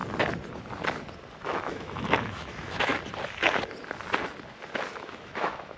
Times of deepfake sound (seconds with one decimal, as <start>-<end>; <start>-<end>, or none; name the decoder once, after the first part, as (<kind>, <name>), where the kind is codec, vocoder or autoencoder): 1.4-2.9 (autoencoder, DAC-VAE); 4.9-5.8